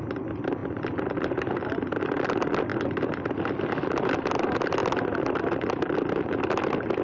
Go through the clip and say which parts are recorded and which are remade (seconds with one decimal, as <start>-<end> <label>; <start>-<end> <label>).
0.0-7.0 recorded

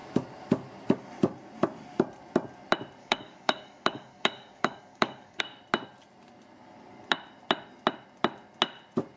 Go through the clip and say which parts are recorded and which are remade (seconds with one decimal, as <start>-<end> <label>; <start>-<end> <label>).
0.0-3.0 recorded; 3.0-5.4 remade; 5.4-9.2 recorded

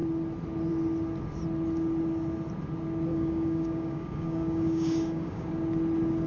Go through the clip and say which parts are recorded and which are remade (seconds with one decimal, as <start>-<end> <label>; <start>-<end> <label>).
0.0-3.1 recorded; 3.1-5.5 remade; 5.5-6.3 recorded

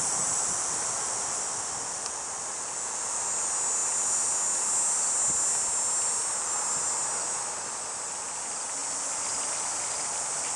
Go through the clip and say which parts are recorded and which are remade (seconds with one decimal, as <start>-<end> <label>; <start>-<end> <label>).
0.0-10.6 recorded

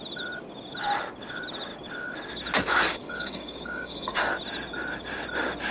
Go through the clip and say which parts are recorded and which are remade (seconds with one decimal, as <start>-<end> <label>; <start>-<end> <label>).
0.0-2.9 recorded; 2.9-4.3 remade; 4.3-5.7 recorded

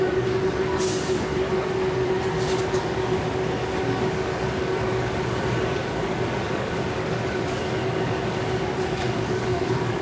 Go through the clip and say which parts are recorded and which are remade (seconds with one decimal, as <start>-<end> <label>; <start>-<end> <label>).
0.0-2.0 remade; 2.0-2.6 recorded; 2.6-10.0 remade

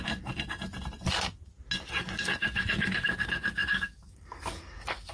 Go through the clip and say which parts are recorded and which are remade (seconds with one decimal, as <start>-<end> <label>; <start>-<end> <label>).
0.0-2.0 recorded; 2.0-5.1 remade

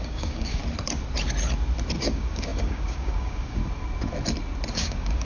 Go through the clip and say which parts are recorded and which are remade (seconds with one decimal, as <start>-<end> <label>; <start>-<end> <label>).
0.0-0.6 remade; 0.6-2.0 recorded; 2.0-3.6 remade; 3.6-4.7 recorded; 4.7-5.2 remade